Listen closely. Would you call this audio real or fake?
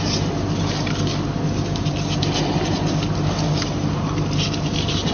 real